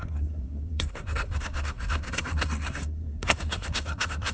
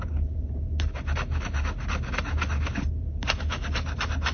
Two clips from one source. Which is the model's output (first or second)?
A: first